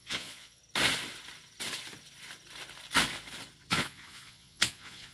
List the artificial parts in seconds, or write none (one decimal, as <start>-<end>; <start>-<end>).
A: 0.0-0.6; 3.7-5.1